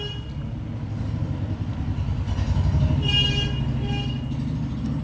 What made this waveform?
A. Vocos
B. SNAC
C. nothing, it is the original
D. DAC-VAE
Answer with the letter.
C